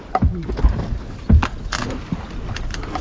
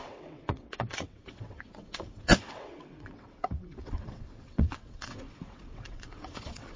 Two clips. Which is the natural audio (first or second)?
first